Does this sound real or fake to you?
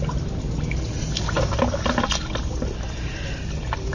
real